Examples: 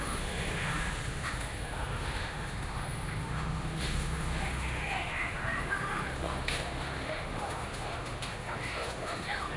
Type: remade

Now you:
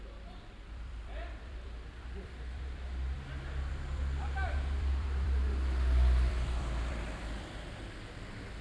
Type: remade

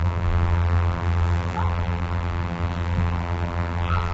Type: remade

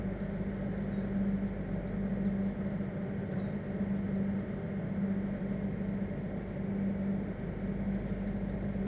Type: recorded